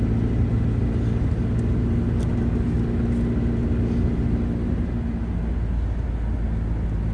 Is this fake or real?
real